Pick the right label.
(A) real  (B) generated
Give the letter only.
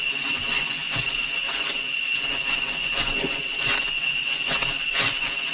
B